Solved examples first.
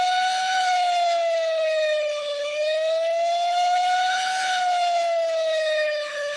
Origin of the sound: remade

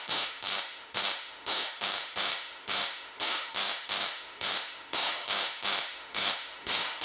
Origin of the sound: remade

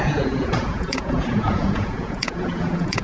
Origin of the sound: remade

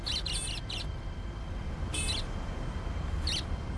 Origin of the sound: recorded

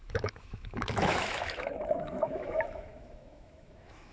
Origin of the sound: remade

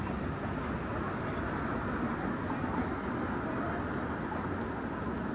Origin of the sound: recorded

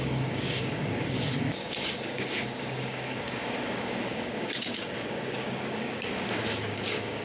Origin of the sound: remade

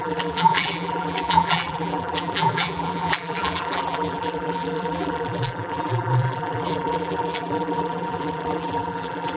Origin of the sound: remade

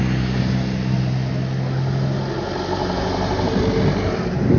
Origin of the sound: recorded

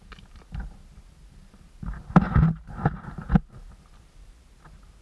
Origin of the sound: recorded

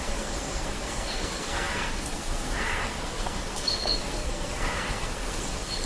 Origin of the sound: remade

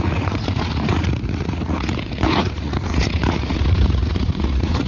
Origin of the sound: remade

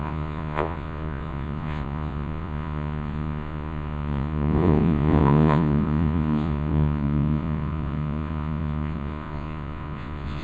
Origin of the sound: remade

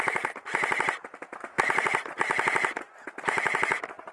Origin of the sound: recorded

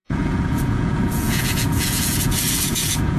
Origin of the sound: remade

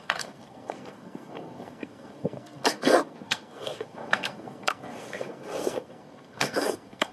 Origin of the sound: remade